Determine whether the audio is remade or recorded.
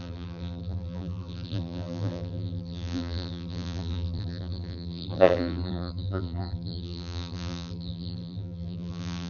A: remade